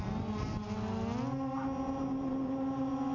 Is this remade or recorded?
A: recorded